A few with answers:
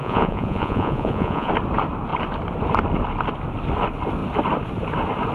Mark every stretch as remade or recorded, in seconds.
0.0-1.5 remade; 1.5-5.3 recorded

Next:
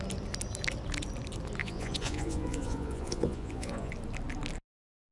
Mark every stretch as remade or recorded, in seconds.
0.0-1.6 recorded; 1.6-3.9 remade; 3.9-5.1 recorded

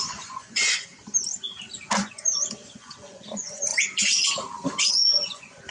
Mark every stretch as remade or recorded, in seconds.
0.0-0.9 remade; 0.9-2.0 recorded; 2.0-3.7 remade; 3.7-4.9 recorded; 4.9-5.7 remade

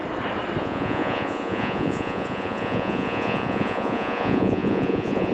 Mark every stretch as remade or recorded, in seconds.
0.0-0.6 recorded; 0.6-5.3 remade